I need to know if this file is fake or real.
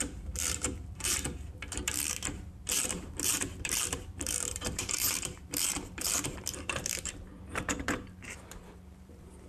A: fake